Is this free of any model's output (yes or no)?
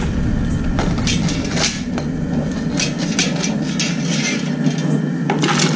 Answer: yes